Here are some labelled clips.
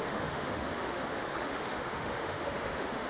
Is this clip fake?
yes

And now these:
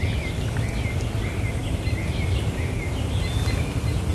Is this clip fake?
no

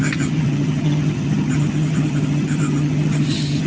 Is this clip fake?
yes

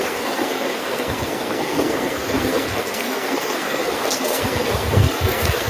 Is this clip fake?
yes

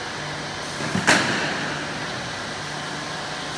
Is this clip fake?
no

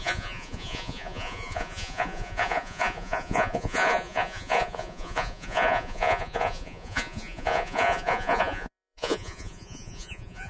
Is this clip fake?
yes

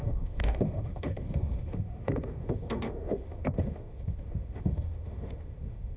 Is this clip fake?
yes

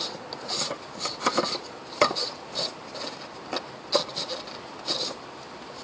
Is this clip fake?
no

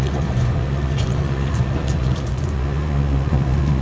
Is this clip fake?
yes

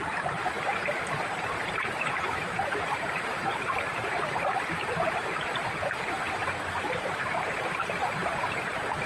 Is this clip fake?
yes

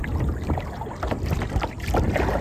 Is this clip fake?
no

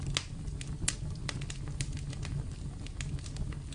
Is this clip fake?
no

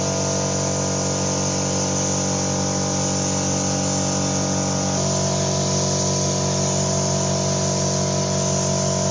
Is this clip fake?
no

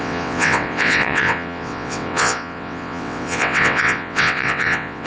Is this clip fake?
yes